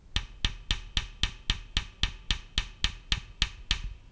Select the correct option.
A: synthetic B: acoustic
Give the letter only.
B